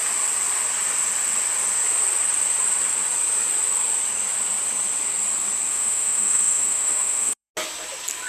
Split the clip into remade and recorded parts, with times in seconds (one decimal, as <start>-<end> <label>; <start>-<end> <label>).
0.0-5.7 recorded; 5.7-7.5 remade; 7.5-8.3 recorded